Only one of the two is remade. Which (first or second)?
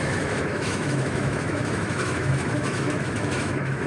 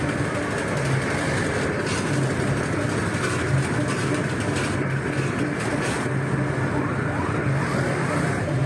first